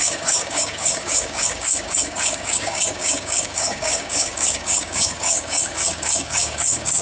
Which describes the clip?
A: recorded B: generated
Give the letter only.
B